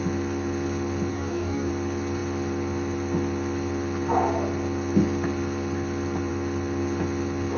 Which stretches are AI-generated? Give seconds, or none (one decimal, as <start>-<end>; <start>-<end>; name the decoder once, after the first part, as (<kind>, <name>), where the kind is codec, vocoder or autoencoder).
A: 1.1-1.7 (codec, DAC)